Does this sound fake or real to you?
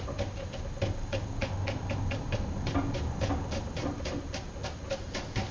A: real